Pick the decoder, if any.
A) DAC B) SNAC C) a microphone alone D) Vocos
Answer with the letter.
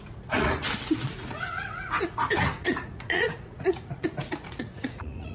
D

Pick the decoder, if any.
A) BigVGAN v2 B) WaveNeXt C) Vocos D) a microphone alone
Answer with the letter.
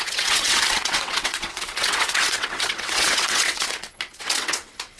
B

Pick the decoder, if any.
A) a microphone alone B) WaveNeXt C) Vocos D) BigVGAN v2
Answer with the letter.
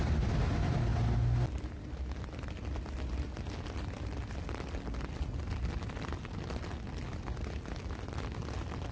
A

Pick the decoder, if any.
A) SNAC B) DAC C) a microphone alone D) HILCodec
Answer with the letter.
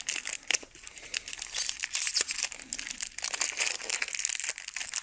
C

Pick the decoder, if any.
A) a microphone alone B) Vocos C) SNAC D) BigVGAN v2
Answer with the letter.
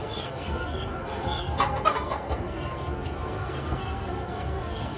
C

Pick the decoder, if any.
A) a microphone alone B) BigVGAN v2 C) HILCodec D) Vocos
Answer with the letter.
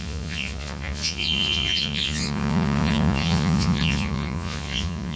D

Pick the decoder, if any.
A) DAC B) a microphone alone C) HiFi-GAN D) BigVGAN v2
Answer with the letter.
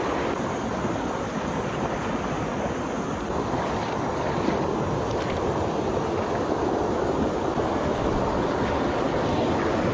B